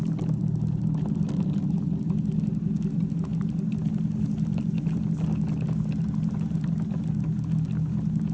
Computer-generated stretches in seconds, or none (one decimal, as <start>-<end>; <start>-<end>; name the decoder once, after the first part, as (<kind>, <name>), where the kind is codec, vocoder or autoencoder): none

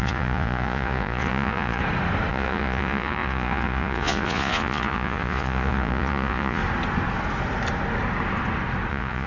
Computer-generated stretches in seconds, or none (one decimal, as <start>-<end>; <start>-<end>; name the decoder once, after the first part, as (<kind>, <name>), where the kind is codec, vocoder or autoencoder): 0.0-1.8 (vocoder, Vocos); 2.3-6.6; 8.9-9.3

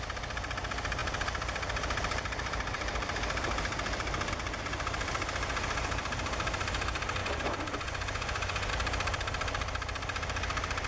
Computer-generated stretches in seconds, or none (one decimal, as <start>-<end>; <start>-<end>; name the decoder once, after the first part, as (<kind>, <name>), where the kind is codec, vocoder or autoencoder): 7.2-8.7 (vocoder, Vocos)

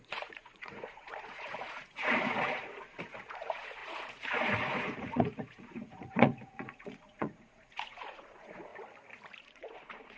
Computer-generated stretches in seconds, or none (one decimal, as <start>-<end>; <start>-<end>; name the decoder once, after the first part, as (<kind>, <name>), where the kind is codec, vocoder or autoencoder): 0.0-8.7 (vocoder, Vocos); 9.4-10.2

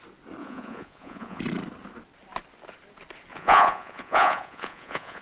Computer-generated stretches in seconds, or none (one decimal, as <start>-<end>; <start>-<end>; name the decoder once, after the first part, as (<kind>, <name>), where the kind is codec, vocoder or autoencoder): 0.4-1.4 (vocoder, Vocos); 3.3-5.2